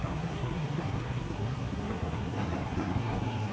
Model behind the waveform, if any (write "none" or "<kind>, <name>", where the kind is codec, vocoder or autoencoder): codec, SNAC